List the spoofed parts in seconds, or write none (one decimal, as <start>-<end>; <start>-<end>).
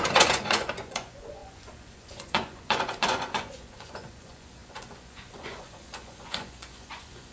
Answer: 0.0-7.3